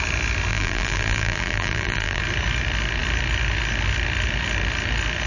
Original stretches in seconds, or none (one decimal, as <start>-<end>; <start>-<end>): 0.0-0.5; 2.2-5.3

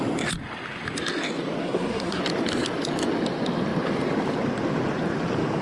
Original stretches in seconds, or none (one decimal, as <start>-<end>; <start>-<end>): 0.0-1.6; 2.2-5.6

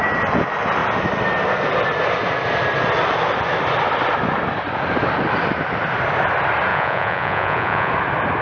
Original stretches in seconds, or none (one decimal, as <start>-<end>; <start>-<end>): 0.0-6.7; 7.9-8.4

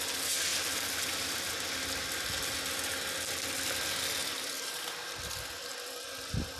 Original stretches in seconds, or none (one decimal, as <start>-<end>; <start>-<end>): 0.0-0.5; 1.8-4.2; 4.9-6.6

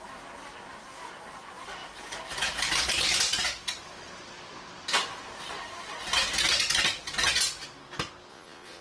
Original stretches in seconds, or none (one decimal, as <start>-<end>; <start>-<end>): 0.0-8.3